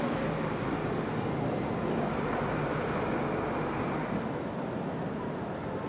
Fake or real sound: fake